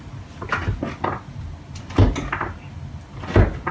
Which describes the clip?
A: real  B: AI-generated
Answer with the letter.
A